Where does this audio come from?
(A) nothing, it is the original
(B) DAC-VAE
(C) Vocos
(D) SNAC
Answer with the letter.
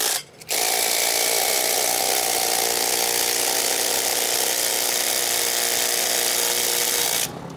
A